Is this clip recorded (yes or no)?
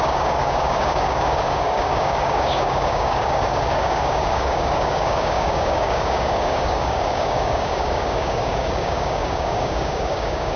no